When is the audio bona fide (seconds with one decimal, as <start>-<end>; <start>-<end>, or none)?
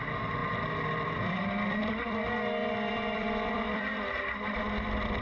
0.0-0.4; 2.2-2.6; 4.2-5.2